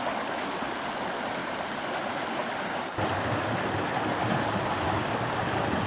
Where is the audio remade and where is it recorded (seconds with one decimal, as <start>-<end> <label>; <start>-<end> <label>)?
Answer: 0.0-5.9 recorded